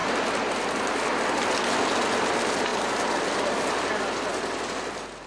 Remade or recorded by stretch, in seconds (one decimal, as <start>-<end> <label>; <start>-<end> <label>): 0.0-5.3 recorded